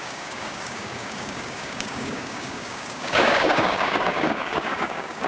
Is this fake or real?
fake